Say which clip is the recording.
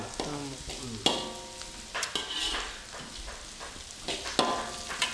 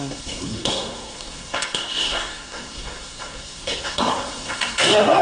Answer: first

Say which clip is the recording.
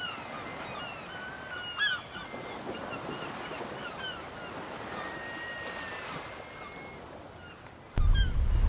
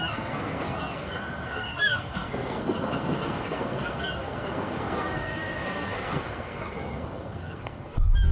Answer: first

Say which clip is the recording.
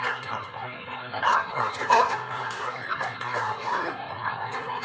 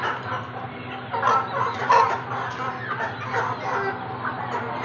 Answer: second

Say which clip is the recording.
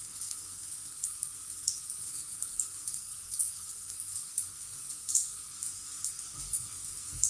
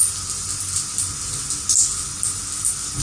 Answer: second